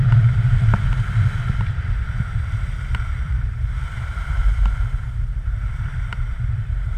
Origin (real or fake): fake